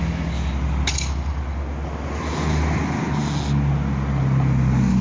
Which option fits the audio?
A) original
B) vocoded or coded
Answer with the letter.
A